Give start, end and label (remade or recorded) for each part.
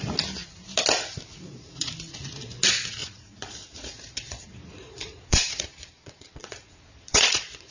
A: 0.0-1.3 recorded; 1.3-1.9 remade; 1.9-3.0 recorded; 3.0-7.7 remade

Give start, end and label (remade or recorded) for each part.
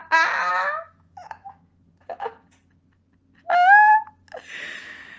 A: 0.0-0.5 recorded; 0.5-1.7 remade; 1.7-4.8 recorded; 4.8-5.2 remade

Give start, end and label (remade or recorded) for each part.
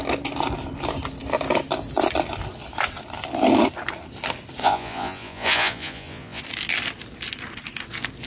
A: 0.0-4.6 recorded; 4.6-6.4 remade; 6.4-8.3 recorded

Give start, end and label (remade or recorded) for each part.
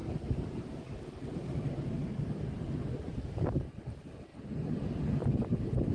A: 0.0-3.5 remade; 3.5-4.3 recorded; 4.3-5.1 remade; 5.1-5.9 recorded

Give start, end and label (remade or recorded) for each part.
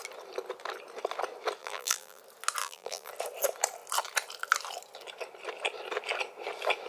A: 0.0-1.6 recorded; 1.6-2.2 remade; 2.2-2.6 recorded; 2.6-3.1 remade; 3.1-6.9 recorded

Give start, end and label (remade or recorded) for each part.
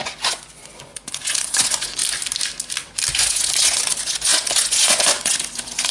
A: 0.0-2.0 remade; 2.0-3.1 recorded; 3.1-5.9 remade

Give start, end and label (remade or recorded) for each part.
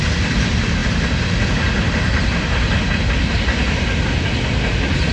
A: 0.0-5.1 recorded